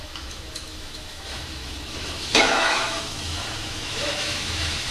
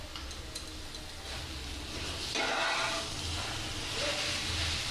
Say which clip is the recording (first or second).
second